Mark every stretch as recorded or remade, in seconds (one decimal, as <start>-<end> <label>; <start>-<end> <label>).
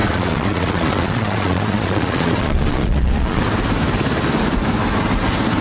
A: 0.0-3.4 remade; 3.4-5.6 recorded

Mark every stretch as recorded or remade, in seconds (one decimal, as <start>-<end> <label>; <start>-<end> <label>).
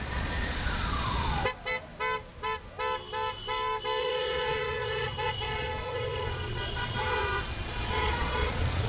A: 0.0-1.4 remade; 1.4-4.0 recorded; 4.0-8.9 remade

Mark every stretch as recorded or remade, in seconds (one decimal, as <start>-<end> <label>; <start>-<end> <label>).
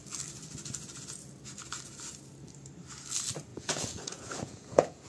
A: 0.0-3.5 recorded; 3.5-5.1 remade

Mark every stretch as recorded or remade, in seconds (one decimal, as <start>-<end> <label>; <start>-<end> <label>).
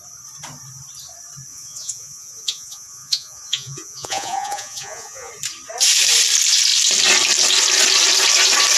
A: 0.0-1.5 recorded; 1.5-5.3 remade; 5.3-8.8 recorded